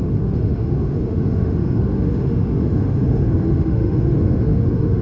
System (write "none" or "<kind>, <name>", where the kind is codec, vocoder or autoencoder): autoencoder, DAC-VAE